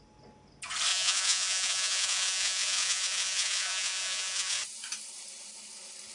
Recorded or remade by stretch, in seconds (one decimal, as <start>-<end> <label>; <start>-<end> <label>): 0.0-0.9 recorded; 0.9-4.6 remade; 4.6-6.1 recorded